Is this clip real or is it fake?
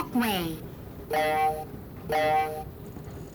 real